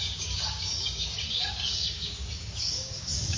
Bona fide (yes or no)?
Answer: no